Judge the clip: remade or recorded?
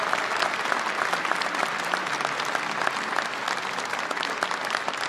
recorded